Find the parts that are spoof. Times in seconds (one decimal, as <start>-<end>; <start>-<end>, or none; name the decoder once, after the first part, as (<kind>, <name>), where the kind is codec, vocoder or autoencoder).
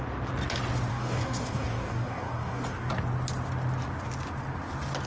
0.9-2.9 (codec, DAC)